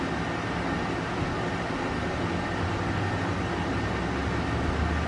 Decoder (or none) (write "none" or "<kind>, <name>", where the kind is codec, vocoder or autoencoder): none